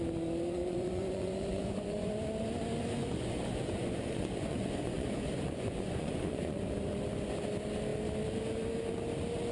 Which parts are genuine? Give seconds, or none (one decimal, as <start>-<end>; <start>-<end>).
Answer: 0.0-0.6; 2.1-3.0; 6.7-9.5